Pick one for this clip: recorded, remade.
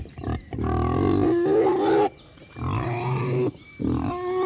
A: recorded